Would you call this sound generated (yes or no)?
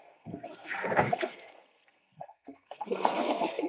yes